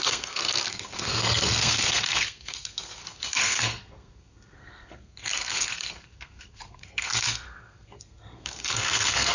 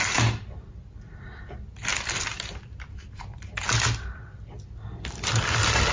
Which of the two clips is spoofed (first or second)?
first